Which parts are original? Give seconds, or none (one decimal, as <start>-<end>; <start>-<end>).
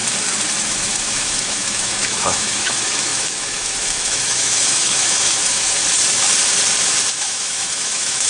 0.0-0.6; 5.8-7.1